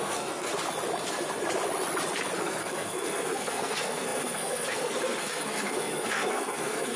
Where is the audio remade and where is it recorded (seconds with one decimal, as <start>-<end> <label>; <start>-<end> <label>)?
0.0-0.5 remade; 0.5-2.4 recorded; 2.4-7.0 remade